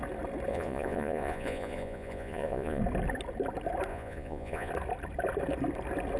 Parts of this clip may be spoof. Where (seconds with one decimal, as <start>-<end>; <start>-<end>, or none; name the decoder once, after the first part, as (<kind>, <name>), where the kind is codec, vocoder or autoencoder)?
0.5-2.8 (vocoder, Vocos); 3.9-4.7